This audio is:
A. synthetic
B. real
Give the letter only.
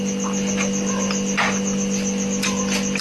B